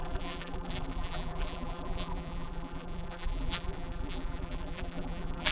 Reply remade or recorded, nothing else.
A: remade